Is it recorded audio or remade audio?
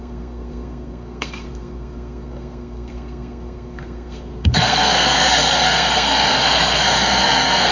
remade